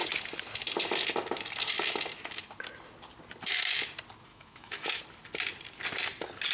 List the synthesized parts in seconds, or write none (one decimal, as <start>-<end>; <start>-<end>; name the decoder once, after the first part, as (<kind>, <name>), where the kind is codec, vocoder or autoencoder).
4.3-5.0 (autoencoder, DAC-VAE)